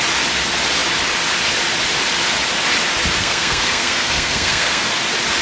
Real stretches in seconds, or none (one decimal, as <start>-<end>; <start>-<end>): 0.0-3.2; 4.9-5.4